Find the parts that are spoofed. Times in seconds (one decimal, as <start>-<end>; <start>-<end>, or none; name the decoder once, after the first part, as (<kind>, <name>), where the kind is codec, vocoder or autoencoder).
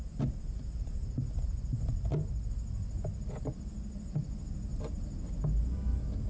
none